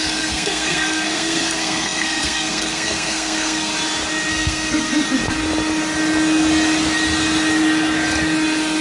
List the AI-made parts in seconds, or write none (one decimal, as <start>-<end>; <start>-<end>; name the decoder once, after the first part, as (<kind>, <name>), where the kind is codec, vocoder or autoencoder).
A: 0.0-3.7 (codec, SNAC); 4.3-4.9